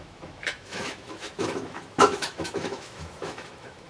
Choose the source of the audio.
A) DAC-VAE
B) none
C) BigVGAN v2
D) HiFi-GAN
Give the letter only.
A